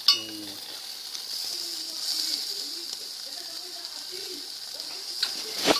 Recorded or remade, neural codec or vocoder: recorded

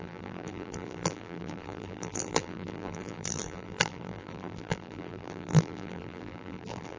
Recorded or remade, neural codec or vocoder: remade, vocoder, BigVGAN v2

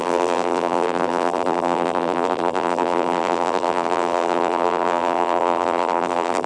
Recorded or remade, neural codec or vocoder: remade, vocoder, BigVGAN v2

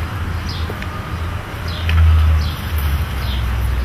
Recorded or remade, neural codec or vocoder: recorded